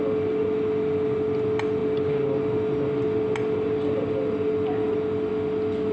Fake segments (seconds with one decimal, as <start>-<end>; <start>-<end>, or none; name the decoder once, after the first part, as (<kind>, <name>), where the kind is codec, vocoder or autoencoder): none